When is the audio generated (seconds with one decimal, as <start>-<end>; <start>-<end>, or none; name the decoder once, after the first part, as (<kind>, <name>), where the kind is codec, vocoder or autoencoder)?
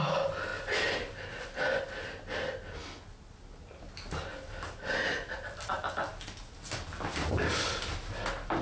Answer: 0.5-2.1 (vocoder, BigVGAN v2); 4.3-6.1